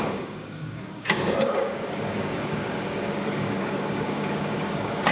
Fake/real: fake